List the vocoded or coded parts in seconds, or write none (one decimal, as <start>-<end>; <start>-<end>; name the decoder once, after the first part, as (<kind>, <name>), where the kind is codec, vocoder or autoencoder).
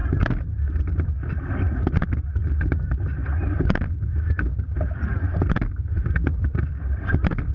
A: 1.0-7.5 (vocoder, BigVGAN v2)